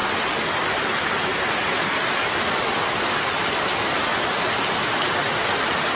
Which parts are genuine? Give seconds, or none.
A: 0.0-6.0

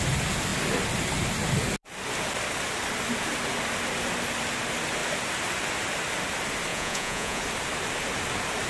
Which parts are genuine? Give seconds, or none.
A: 0.0-6.7; 7.4-8.7

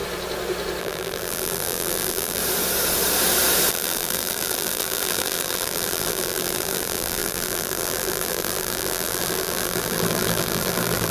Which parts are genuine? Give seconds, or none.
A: 0.0-0.8; 2.4-3.7

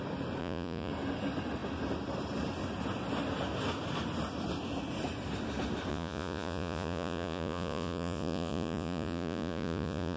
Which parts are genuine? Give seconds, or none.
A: 0.0-0.4; 0.9-5.9

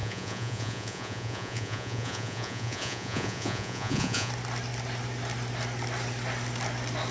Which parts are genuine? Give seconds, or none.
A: 4.3-7.1

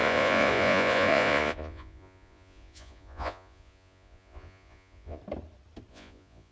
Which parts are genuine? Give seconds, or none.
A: 5.2-5.9